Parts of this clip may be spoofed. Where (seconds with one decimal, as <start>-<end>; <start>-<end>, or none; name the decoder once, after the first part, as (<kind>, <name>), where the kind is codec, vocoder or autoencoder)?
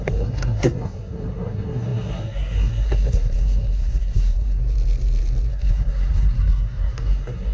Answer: 0.0-4.6 (codec, SNAC); 5.5-7.5